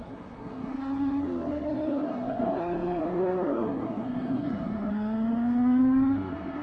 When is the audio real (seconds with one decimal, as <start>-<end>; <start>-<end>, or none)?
none